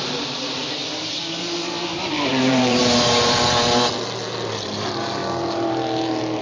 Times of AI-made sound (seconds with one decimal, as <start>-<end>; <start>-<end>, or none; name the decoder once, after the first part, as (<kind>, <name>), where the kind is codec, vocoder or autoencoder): 0.0-0.8 (vocoder, BigVGAN v2); 1.4-2.8; 4.6-5.2